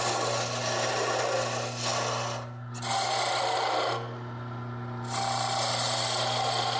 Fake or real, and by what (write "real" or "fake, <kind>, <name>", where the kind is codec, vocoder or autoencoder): real